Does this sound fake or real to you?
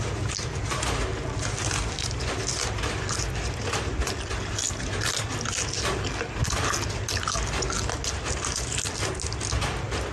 real